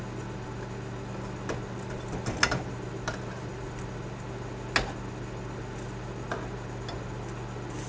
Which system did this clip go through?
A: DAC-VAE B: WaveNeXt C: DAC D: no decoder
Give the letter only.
D